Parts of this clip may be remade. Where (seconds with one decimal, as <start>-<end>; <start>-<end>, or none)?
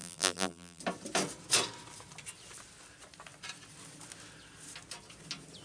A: 0.0-0.8